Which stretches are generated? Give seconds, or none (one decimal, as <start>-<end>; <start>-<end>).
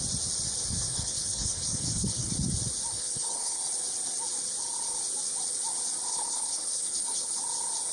0.9-2.3; 2.9-3.6; 6.1-7.4